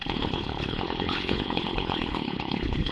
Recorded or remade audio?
remade